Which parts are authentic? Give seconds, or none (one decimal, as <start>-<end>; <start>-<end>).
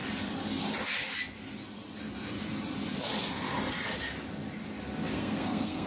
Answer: 0.0-5.1